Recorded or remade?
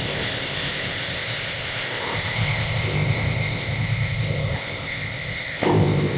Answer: remade